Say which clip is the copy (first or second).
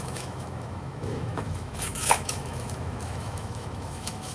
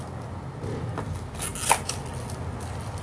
first